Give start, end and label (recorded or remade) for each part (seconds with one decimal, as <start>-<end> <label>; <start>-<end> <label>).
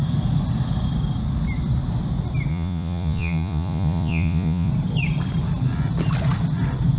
0.0-2.5 recorded; 2.5-4.7 remade; 4.7-7.0 recorded